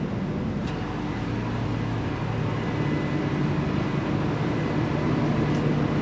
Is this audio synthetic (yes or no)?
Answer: no